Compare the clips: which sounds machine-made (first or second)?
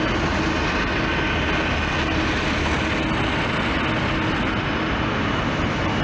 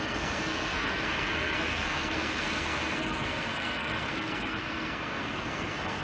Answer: second